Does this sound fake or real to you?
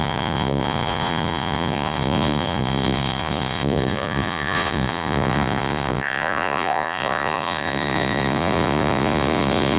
fake